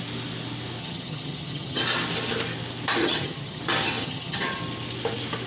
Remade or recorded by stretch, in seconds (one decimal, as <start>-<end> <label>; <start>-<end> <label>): 0.0-0.8 recorded; 0.8-1.8 remade; 1.8-3.0 recorded; 3.0-3.6 remade; 3.6-4.0 recorded; 4.0-4.6 remade; 4.6-5.5 recorded